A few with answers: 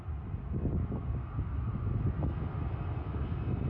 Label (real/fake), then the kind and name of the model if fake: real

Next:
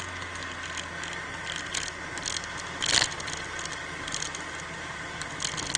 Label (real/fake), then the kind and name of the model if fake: real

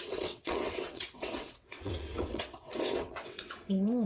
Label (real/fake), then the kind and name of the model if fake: fake, vocoder, WaveNeXt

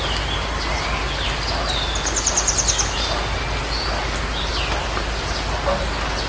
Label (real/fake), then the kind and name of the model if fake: real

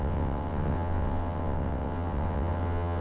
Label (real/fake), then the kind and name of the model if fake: fake, vocoder, WaveNeXt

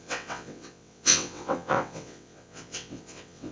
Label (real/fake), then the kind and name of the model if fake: fake, vocoder, WaveNeXt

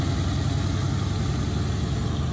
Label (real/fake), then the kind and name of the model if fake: real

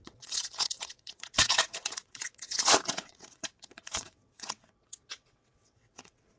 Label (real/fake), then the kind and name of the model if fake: fake, vocoder, WaveNeXt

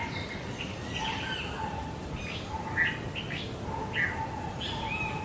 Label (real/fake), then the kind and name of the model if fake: real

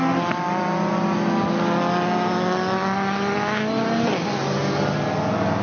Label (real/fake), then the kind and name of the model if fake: real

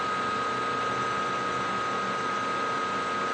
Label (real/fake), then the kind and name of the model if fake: real